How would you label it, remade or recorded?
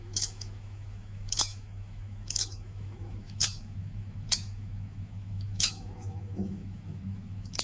remade